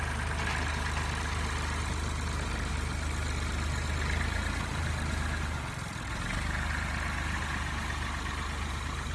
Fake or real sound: real